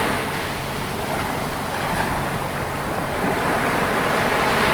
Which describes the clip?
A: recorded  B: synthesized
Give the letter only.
A